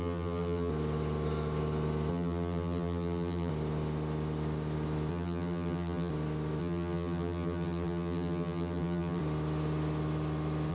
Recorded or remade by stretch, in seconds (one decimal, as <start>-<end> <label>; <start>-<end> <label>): 0.0-0.7 remade; 0.7-2.1 recorded; 2.1-3.5 remade; 3.5-5.1 recorded; 5.1-6.1 remade; 6.1-6.6 recorded; 6.6-9.2 remade; 9.2-10.7 recorded